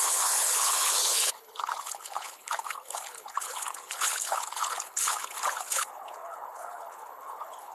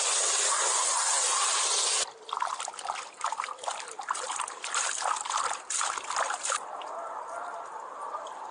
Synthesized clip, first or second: first